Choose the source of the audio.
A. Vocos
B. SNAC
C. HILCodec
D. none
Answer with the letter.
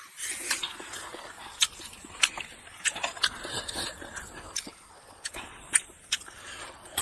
D